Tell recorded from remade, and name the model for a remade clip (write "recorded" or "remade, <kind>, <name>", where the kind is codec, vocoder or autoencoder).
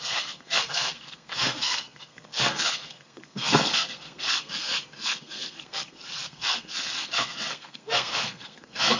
remade, codec, SNAC